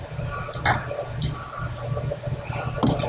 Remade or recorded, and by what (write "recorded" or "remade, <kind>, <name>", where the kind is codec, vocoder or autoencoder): recorded